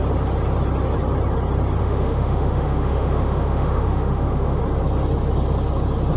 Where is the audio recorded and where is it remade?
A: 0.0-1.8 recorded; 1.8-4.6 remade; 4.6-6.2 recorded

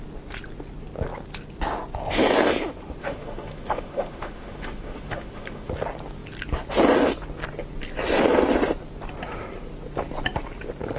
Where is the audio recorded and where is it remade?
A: 0.0-3.0 recorded; 3.0-5.7 remade; 5.7-11.0 recorded